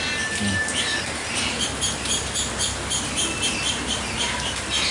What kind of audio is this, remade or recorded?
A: recorded